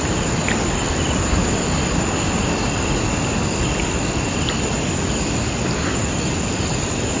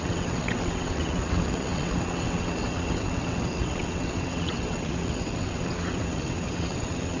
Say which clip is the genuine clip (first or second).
first